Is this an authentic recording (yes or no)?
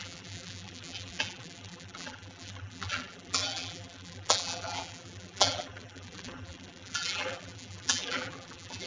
no